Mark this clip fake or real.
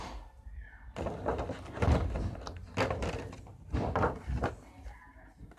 real